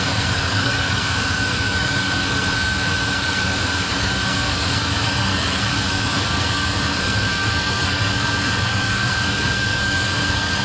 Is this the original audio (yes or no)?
no